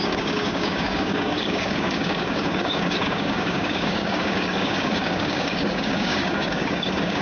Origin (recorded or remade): remade